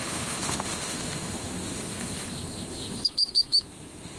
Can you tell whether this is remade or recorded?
remade